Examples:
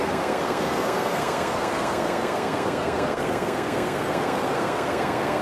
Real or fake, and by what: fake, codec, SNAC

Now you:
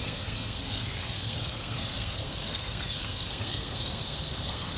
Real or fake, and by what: fake, codec, SNAC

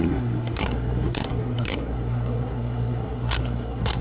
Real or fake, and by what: fake, codec, SNAC